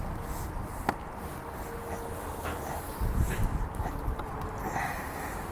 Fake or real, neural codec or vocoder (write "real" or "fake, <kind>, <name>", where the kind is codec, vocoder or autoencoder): real